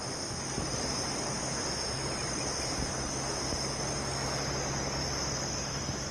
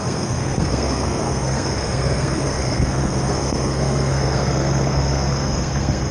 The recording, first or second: first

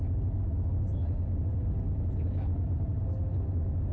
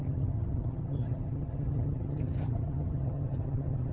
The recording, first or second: first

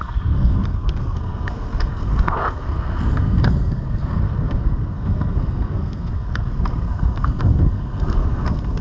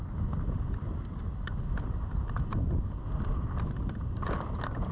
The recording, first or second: second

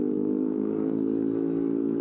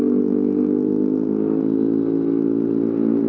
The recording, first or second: second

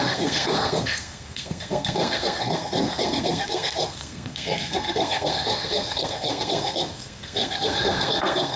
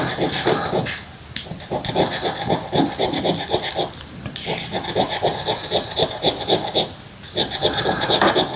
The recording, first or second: second